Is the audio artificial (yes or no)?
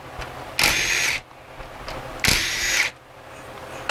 no